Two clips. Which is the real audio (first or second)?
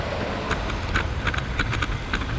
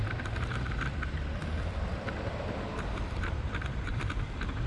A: first